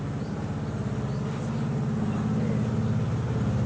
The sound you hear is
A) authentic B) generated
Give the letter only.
A